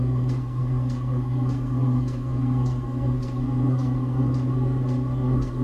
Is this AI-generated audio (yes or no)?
yes